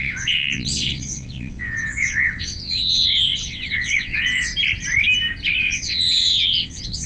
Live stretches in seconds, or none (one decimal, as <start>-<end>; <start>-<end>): 4.5-5.6